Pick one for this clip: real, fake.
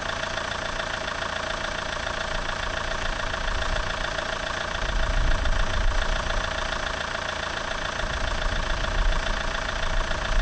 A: fake